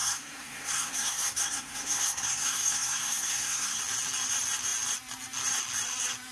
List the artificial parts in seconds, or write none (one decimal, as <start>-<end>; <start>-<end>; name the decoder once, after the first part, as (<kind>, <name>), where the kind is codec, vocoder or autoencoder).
0.0-3.8 (codec, SNAC)